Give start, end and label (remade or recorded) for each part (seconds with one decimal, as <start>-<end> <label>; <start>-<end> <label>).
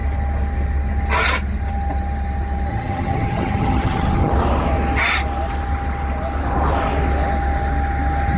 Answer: 0.0-2.7 recorded; 2.7-4.3 remade; 4.3-8.4 recorded